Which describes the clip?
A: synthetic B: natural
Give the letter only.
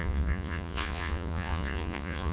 A